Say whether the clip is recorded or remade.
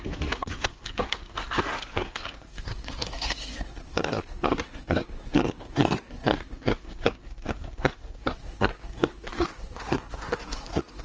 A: remade